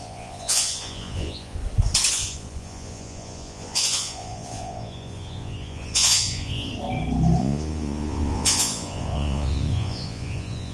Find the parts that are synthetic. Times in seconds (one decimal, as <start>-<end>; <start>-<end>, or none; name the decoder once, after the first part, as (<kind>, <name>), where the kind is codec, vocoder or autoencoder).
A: 0.0-1.6 (vocoder, Vocos); 2.1-6.7; 7.4-10.7

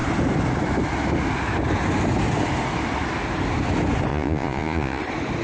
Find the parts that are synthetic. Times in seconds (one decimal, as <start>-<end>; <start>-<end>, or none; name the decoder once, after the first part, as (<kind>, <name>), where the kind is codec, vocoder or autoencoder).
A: 4.1-5.0 (vocoder, Vocos)

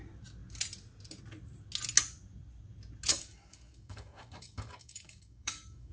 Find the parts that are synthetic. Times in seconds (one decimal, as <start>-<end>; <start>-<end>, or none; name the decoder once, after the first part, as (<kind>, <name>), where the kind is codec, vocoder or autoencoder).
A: 3.1-5.9 (codec, DAC)

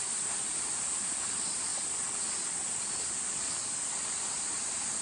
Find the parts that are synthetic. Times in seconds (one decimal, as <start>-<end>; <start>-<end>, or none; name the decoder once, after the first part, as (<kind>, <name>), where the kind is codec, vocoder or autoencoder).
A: 0.0-1.7 (vocoder, BigVGAN v2); 4.4-5.0

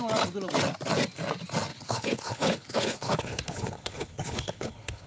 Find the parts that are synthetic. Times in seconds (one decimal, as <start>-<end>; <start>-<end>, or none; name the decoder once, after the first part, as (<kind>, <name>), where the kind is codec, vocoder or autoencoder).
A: 1.7-5.1 (codec, HILCodec)